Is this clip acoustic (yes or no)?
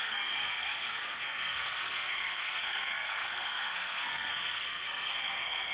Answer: no